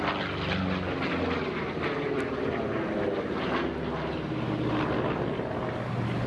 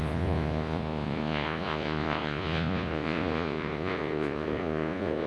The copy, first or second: second